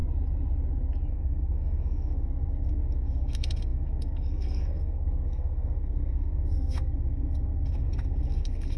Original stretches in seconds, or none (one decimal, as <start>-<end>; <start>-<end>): 0.0-1.1